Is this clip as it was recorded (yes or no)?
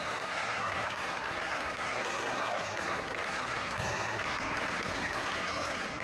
no